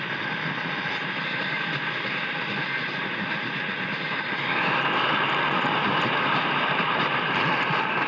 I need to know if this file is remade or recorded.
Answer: remade